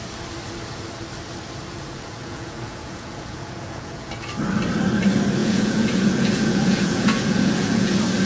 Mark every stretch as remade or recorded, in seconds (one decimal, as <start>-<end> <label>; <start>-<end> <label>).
0.0-1.7 recorded; 1.7-4.1 remade; 4.1-5.4 recorded; 5.4-7.9 remade; 7.9-8.3 recorded